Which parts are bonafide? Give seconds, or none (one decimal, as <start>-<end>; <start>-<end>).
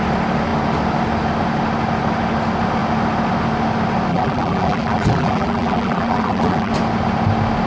0.0-4.1; 6.7-7.7